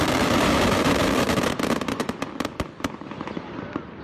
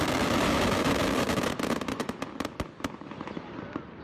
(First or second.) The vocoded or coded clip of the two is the first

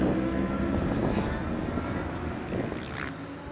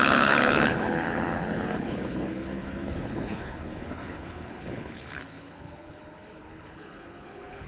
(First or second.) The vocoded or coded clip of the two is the second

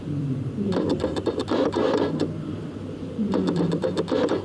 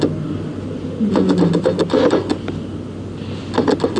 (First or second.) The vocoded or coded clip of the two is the first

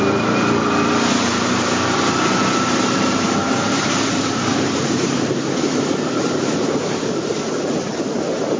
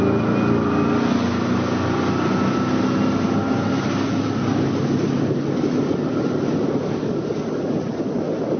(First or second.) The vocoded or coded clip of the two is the first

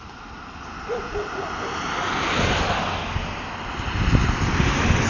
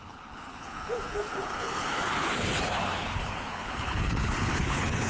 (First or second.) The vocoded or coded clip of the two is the second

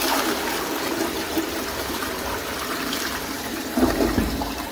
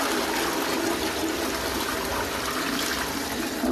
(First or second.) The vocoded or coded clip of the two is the first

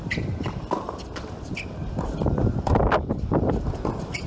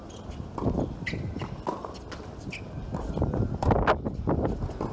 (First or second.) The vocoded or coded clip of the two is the first